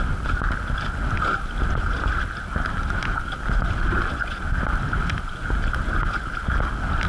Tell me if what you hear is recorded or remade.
recorded